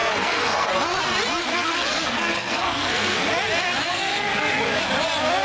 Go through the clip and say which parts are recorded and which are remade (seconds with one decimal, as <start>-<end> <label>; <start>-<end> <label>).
0.0-0.7 remade; 0.7-1.5 recorded; 1.5-3.3 remade; 3.3-3.9 recorded; 3.9-4.8 remade; 4.8-5.4 recorded